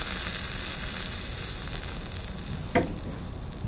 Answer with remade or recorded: recorded